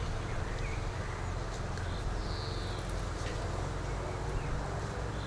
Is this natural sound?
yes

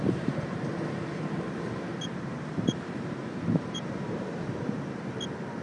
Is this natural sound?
no